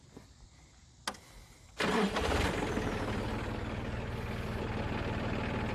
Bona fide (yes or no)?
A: yes